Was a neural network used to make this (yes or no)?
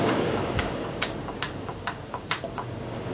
yes